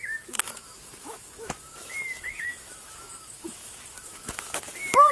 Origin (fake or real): fake